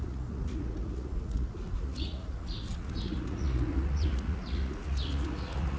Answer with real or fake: fake